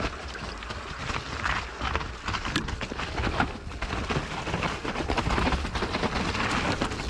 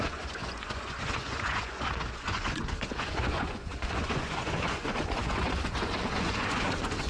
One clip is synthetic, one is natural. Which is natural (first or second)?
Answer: first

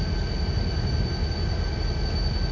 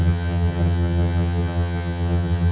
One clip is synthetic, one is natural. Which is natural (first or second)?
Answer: first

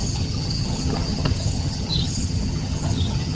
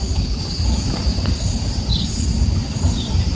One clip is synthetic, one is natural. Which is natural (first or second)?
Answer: second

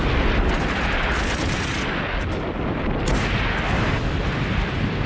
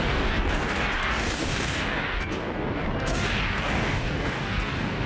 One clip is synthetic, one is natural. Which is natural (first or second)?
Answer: first